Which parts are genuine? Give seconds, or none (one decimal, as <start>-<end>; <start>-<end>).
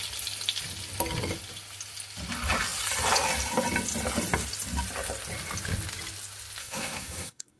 0.0-6.6